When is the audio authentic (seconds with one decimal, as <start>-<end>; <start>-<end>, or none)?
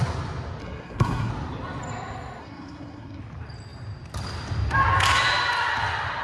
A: 0.0-0.6; 1.3-2.4; 3.2-6.2